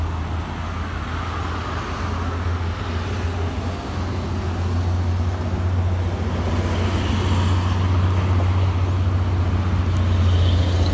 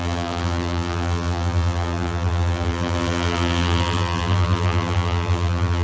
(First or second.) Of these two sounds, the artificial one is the second